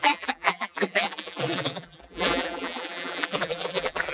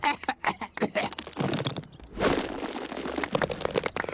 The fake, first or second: first